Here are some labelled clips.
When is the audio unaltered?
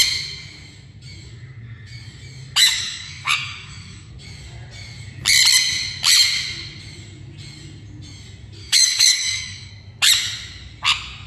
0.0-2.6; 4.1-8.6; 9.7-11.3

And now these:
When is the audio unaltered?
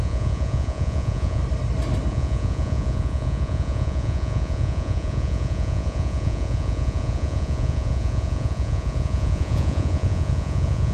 1.4-2.1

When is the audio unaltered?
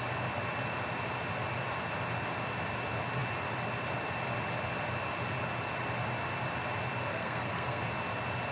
0.0-7.1; 7.8-8.5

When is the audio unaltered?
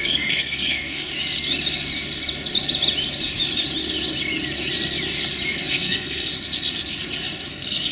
1.1-5.7; 6.3-7.5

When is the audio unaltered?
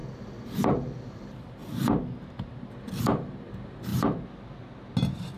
0.0-1.0; 1.6-2.8; 3.9-5.4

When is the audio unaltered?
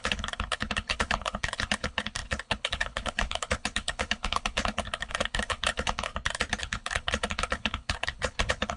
6.1-6.6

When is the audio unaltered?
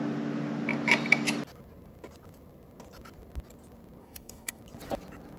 0.0-4.0; 4.6-5.4